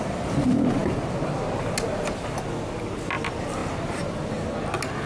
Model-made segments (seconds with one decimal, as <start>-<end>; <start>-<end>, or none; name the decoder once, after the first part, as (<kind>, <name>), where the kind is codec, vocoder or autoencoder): none

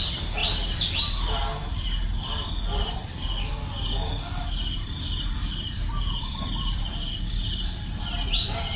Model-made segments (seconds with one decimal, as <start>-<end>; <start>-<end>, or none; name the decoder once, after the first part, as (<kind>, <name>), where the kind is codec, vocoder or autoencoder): none

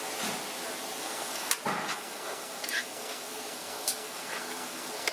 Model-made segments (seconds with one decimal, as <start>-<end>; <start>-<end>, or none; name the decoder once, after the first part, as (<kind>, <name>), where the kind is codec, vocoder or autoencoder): 1.0-1.5 (codec, SNAC); 1.9-5.1

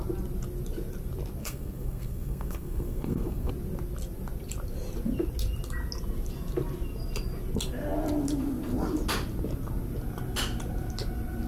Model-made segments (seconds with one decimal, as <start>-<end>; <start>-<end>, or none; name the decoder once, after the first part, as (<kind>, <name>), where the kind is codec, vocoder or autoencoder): 1.4-3.5 (codec, SNAC)